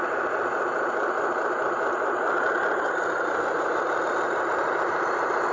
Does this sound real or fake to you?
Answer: real